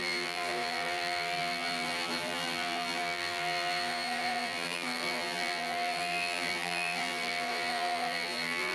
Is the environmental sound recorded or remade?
remade